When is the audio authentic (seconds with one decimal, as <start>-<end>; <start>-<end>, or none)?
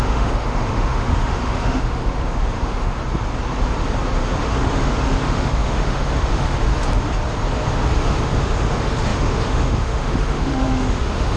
3.0-4.4; 6.7-8.0